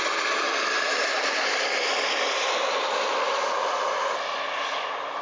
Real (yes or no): yes